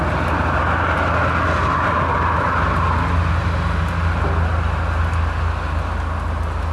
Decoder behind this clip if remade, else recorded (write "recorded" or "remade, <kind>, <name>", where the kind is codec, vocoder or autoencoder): recorded